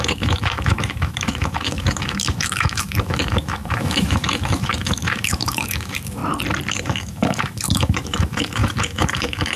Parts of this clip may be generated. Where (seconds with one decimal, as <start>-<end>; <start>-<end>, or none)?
0.0-6.2; 6.7-9.6